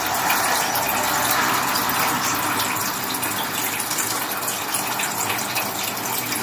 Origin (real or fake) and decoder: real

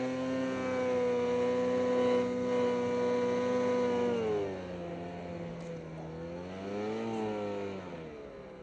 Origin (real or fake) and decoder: real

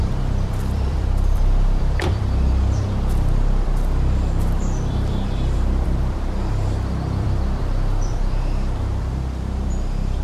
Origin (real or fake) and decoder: fake, vocoder, BigVGAN v2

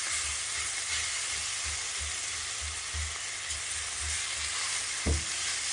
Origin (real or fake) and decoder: real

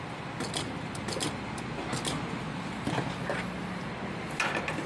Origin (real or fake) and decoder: real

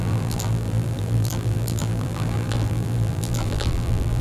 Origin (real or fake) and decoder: fake, vocoder, BigVGAN v2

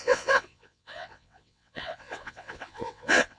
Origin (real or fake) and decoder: fake, vocoder, WaveNeXt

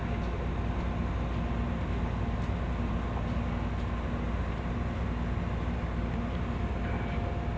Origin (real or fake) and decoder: real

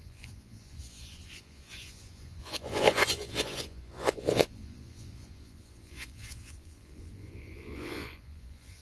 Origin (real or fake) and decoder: fake, vocoder, Vocos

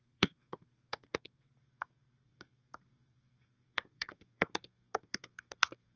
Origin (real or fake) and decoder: fake, codec, SNAC